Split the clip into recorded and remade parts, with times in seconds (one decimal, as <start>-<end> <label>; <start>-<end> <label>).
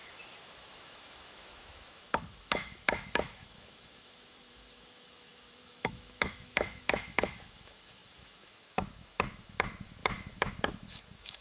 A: 0.0-11.4 remade